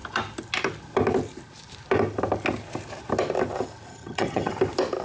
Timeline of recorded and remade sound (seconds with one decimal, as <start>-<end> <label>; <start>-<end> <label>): 0.0-3.9 recorded; 3.9-4.5 remade; 4.5-5.0 recorded